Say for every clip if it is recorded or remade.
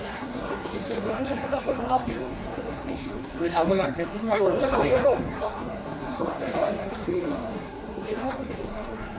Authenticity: remade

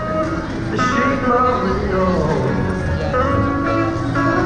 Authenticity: recorded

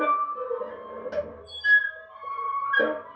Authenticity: recorded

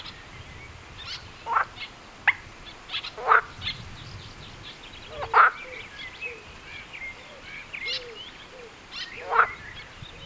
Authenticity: recorded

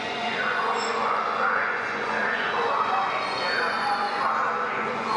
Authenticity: remade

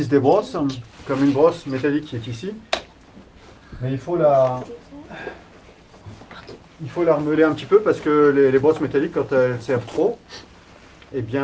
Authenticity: recorded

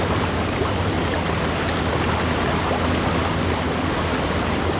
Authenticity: recorded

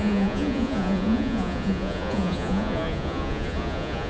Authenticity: remade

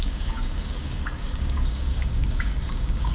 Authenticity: remade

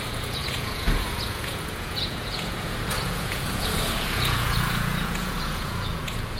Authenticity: remade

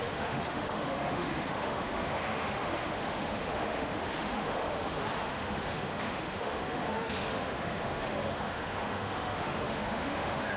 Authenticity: remade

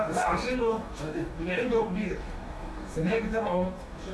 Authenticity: remade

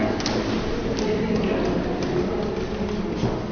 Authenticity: recorded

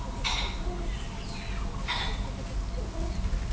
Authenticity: recorded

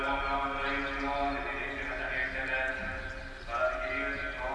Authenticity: recorded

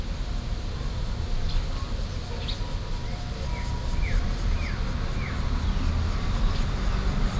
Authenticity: recorded